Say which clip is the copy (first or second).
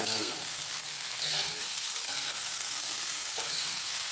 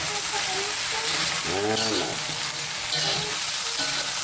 first